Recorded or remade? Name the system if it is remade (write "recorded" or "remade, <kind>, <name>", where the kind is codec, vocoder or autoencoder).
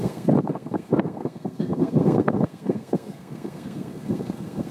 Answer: remade, codec, SNAC